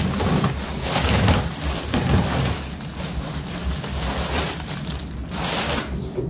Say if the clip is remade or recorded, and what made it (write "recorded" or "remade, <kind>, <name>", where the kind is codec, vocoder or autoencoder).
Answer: recorded